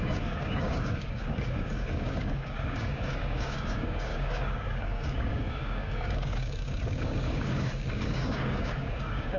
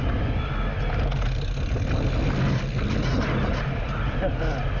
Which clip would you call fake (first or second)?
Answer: first